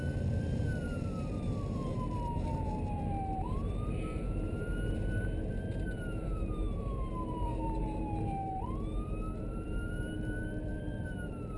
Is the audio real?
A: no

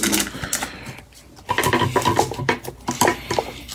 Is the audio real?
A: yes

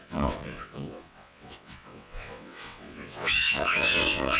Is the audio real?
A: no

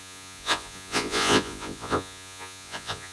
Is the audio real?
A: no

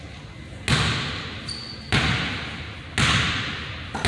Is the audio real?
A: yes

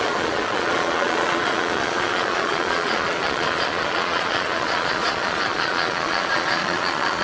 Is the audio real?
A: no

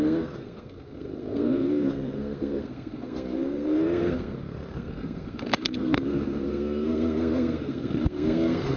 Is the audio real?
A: no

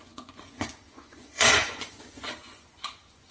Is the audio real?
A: no